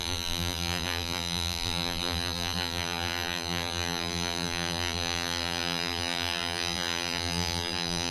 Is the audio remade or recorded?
remade